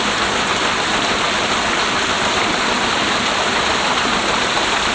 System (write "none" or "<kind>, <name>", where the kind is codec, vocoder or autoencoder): none